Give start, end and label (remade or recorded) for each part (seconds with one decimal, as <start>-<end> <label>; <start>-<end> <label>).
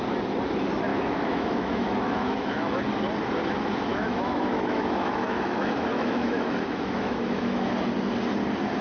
0.0-0.9 recorded; 0.9-2.8 remade; 2.8-3.9 recorded; 3.9-7.7 remade; 7.7-8.8 recorded